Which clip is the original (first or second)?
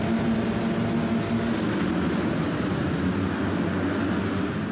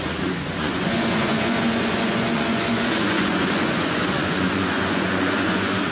first